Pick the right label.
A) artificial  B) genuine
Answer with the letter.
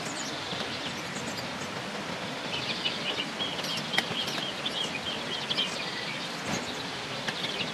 B